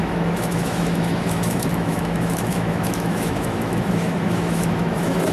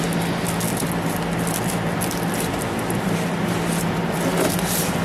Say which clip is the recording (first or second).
second